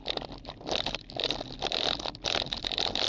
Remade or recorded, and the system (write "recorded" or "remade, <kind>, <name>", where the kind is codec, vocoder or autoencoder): recorded